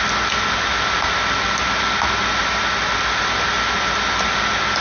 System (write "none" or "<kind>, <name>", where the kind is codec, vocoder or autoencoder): none